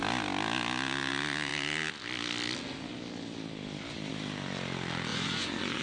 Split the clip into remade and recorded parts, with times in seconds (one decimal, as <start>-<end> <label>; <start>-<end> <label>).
0.0-5.1 recorded; 5.1-5.8 remade